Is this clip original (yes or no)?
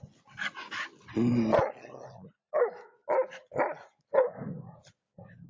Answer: yes